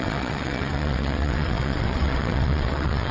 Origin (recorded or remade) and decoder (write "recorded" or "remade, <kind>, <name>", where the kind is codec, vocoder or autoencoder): remade, vocoder, WaveNeXt